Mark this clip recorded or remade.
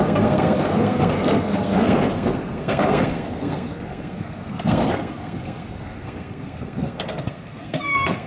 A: remade